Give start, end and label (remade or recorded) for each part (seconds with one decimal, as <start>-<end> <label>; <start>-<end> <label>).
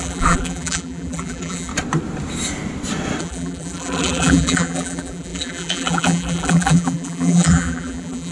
0.0-1.7 remade; 1.7-3.2 recorded; 3.2-8.3 remade